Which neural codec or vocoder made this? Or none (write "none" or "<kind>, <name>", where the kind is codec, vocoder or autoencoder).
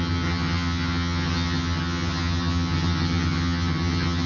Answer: vocoder, HiFi-GAN